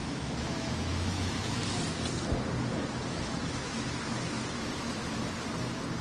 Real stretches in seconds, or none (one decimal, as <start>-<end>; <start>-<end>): 1.6-3.1; 5.0-6.0